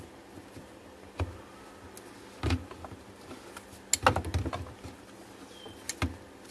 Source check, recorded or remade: recorded